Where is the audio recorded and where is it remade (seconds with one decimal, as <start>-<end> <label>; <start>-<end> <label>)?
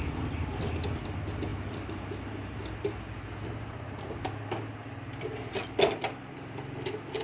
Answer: 0.0-7.2 recorded